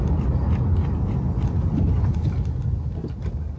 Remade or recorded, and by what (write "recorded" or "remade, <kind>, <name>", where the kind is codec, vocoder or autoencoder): recorded